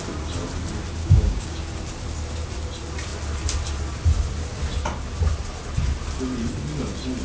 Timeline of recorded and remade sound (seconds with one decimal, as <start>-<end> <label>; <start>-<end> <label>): 0.0-1.0 recorded; 1.0-1.6 remade; 1.6-7.2 recorded